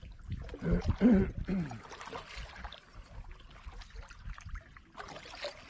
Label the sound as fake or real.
real